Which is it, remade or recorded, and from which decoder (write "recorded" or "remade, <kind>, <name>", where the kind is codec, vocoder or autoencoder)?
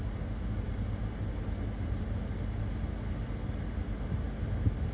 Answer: recorded